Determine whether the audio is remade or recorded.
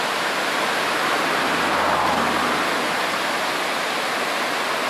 recorded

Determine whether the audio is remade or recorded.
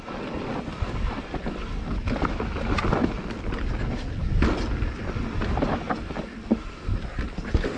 recorded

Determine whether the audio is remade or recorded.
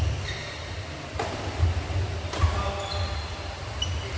recorded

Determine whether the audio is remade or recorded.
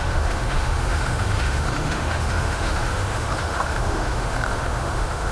remade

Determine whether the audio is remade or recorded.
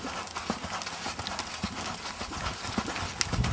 recorded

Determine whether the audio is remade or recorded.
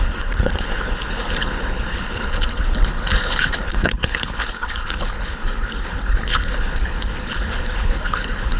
remade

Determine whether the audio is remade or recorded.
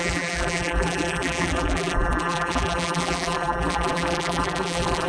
remade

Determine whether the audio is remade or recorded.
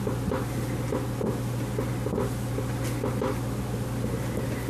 recorded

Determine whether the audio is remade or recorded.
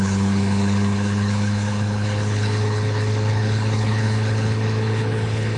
remade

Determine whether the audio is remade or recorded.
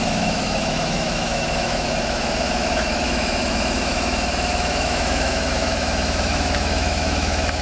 remade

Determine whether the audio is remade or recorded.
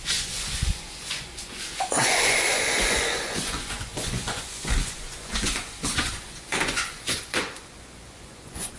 remade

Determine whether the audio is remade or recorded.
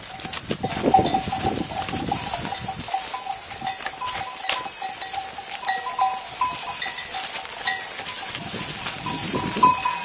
recorded